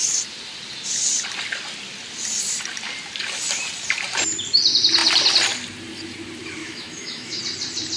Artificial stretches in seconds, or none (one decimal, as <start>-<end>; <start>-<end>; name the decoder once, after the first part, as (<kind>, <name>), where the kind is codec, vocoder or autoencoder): 6.6-7.4 (autoencoder, DAC-VAE)